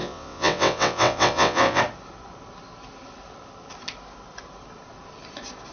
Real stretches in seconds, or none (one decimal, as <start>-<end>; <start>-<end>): 1.8-5.7